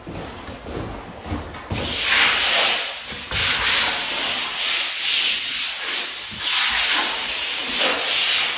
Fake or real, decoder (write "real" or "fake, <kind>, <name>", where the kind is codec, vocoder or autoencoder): real